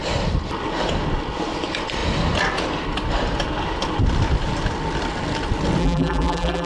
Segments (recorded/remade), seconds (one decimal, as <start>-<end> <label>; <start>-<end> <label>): 0.0-5.8 recorded; 5.8-6.7 remade